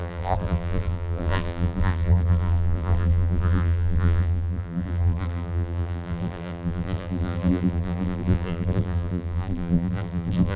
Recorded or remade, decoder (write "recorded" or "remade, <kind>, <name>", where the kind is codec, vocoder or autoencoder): remade, vocoder, BigVGAN v2